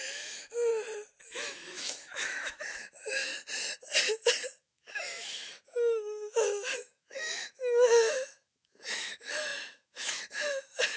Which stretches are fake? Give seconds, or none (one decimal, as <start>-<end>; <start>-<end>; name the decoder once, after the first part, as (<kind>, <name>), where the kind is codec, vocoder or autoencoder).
0.0-0.7 (autoencoder, DAC-VAE); 1.2-3.3; 4.6-11.0